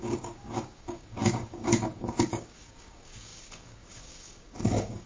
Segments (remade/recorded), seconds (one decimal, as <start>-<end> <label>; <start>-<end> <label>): 0.0-5.1 remade